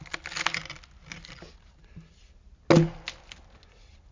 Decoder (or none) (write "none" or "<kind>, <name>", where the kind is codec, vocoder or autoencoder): none